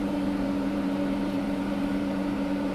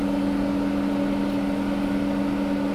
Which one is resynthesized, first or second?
first